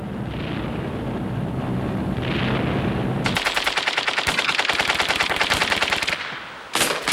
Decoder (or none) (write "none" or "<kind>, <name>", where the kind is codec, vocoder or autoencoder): none